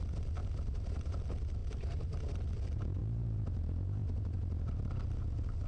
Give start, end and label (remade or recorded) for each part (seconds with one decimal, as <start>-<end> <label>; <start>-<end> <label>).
0.0-0.4 recorded; 0.4-1.1 remade; 1.1-1.6 recorded; 1.6-2.2 remade; 2.2-3.0 recorded; 3.0-3.6 remade; 3.6-4.0 recorded; 4.0-4.6 remade; 4.6-5.7 recorded